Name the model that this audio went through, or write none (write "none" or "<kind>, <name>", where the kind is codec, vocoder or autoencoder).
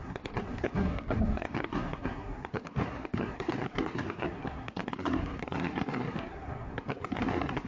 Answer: codec, SNAC